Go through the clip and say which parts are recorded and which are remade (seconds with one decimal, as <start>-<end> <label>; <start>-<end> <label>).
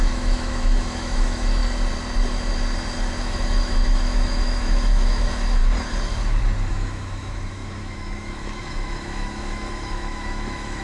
0.0-1.6 remade; 1.6-3.2 recorded; 3.2-5.6 remade; 5.6-6.7 recorded; 6.7-10.8 remade